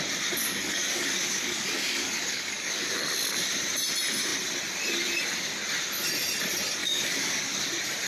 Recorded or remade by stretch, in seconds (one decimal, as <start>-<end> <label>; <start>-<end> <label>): 0.0-0.4 recorded; 0.4-3.0 remade; 3.0-6.8 recorded; 6.8-7.5 remade; 7.5-8.1 recorded

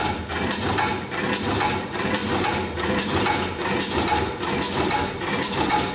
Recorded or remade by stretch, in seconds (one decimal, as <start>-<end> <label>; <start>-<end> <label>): 0.0-0.9 remade; 0.9-1.8 recorded; 1.8-5.9 remade